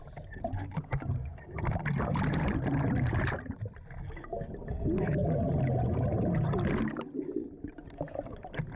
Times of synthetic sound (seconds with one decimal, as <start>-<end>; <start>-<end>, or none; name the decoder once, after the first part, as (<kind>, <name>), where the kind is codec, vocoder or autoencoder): none